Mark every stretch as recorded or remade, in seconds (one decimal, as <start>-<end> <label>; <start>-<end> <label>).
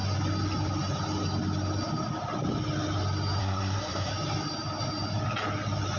0.0-3.4 recorded; 3.4-4.1 remade; 4.1-6.0 recorded